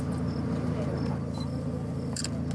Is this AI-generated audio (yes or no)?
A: no